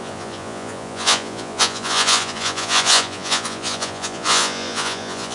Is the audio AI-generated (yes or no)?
yes